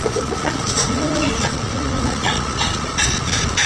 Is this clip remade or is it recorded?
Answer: remade